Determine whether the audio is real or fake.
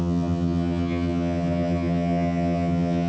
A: fake